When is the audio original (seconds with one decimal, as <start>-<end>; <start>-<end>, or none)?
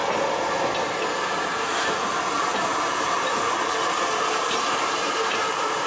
0.0-2.7